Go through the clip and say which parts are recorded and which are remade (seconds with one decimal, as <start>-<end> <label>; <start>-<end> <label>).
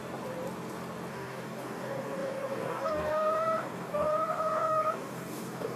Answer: 0.0-1.1 recorded; 1.1-5.8 remade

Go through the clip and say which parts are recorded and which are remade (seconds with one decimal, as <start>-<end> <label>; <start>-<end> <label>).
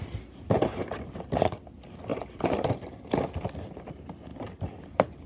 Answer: 0.0-2.1 recorded; 2.1-3.3 remade; 3.3-4.3 recorded; 4.3-5.3 remade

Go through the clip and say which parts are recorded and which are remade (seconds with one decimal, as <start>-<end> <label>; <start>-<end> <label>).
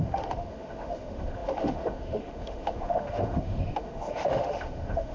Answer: 0.0-5.1 remade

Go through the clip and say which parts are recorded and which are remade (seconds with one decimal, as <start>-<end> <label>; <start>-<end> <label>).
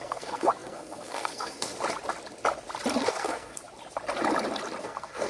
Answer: 0.0-1.7 remade; 1.7-3.0 recorded; 3.0-3.6 remade; 3.6-4.8 recorded; 4.8-5.3 remade